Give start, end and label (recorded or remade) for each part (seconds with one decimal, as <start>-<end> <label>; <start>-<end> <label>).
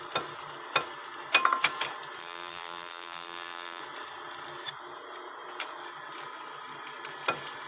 0.0-2.2 recorded; 2.2-3.8 remade; 3.8-7.7 recorded